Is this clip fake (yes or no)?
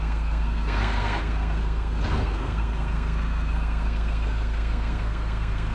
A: yes